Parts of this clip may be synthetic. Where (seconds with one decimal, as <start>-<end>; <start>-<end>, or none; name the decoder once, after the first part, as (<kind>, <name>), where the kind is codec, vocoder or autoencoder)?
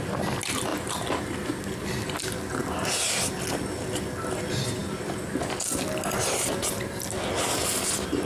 none